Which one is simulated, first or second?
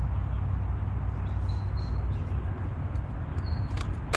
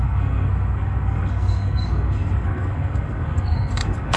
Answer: second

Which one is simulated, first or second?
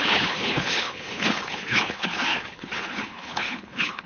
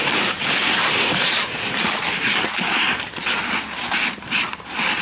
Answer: first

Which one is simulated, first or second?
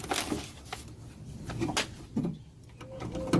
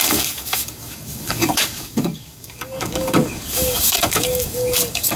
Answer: second